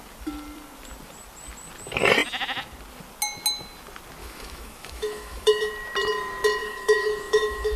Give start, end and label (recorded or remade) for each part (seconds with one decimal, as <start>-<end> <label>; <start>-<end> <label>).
0.0-4.2 recorded; 4.2-5.7 remade; 5.7-6.6 recorded; 6.6-7.8 remade